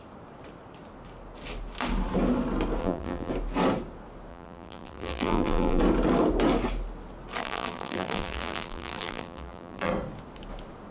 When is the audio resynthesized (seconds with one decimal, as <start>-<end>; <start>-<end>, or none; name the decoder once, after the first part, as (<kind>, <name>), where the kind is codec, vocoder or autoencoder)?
2.8-3.3 (vocoder, BigVGAN v2); 4.3-5.8; 7.4-9.9